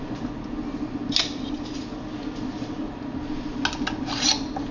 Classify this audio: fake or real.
real